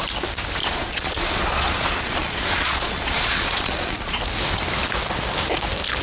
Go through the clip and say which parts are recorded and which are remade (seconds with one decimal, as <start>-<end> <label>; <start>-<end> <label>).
0.0-0.6 recorded; 0.6-4.2 remade; 4.2-6.0 recorded